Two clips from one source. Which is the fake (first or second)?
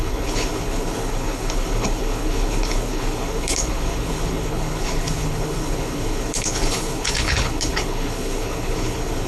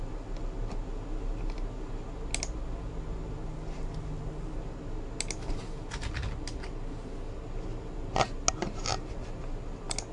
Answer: first